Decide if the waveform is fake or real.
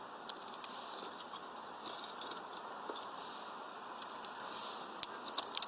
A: real